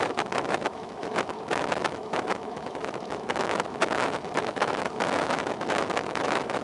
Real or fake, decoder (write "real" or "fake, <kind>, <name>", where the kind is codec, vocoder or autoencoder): fake, autoencoder, DAC-VAE